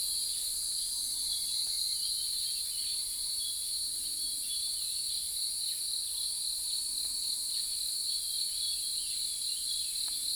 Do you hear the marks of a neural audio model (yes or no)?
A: no